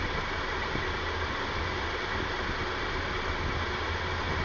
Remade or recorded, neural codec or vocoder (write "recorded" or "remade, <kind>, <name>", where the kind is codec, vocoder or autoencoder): recorded